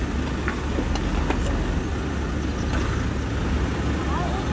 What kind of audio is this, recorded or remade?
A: recorded